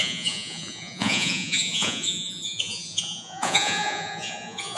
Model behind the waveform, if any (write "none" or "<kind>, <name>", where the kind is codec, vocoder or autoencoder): vocoder, Vocos